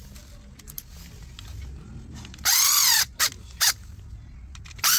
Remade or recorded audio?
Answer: recorded